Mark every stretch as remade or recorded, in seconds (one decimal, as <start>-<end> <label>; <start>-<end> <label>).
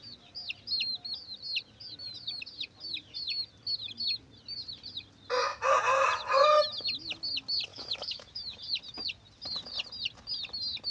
0.0-7.7 recorded; 7.7-8.6 remade; 8.6-10.9 recorded